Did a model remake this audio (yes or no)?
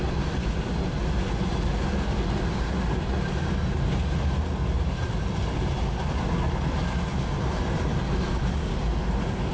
no